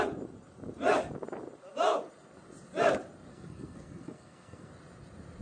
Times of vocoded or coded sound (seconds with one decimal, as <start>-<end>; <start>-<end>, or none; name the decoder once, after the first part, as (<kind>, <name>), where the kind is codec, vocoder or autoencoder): 3.3-4.7 (codec, SNAC)

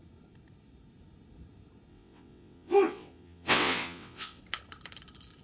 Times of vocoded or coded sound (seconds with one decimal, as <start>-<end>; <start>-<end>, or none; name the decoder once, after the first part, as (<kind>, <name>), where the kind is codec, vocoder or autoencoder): 1.9-4.4 (vocoder, WaveNeXt)